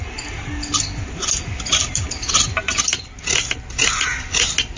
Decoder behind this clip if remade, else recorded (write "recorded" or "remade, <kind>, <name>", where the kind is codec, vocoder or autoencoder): recorded